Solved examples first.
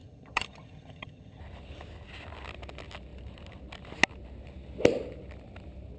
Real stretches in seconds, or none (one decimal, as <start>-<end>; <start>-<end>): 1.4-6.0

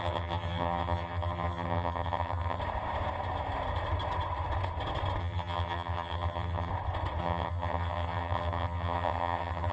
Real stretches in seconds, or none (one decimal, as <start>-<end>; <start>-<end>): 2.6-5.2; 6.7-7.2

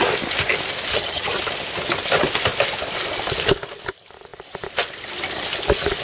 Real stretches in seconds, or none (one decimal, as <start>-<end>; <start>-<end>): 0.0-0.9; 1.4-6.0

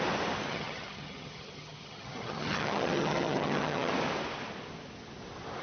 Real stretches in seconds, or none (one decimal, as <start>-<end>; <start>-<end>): 0.0-0.5; 3.9-5.6

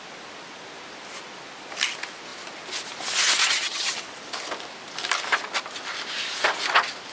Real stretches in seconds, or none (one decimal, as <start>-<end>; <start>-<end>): 0.0-3.4; 3.9-7.1

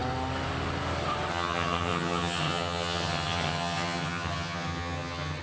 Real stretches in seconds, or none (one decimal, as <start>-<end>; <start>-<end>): 0.0-1.3

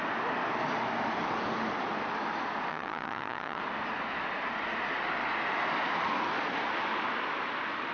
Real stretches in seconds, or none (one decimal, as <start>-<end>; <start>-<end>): 0.0-2.7; 3.6-7.9